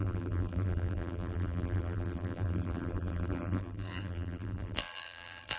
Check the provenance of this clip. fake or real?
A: fake